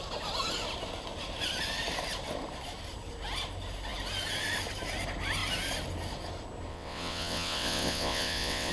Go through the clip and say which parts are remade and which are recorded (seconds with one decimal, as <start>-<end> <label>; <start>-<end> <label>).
0.0-6.7 recorded; 6.7-8.7 remade